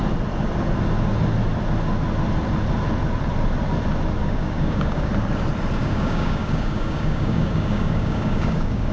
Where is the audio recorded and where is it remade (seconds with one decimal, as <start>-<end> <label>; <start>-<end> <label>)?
0.0-4.2 recorded; 4.2-5.1 remade; 5.1-5.8 recorded; 5.8-8.9 remade